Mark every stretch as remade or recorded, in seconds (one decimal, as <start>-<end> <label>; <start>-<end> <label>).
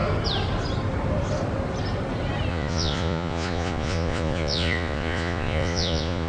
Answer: 0.0-2.5 recorded; 2.5-6.3 remade